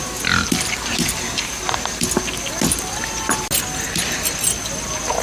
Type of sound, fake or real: real